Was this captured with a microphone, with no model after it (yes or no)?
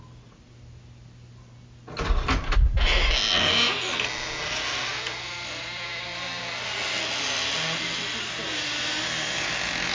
yes